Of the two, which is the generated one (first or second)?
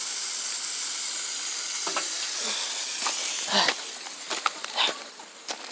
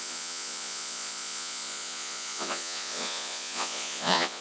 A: second